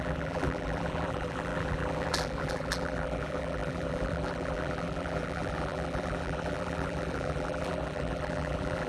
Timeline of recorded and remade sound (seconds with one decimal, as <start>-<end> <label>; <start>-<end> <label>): 0.0-8.9 remade